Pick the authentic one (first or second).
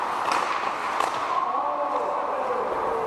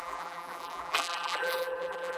first